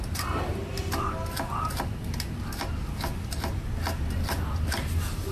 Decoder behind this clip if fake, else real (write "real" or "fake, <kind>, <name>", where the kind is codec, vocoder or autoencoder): real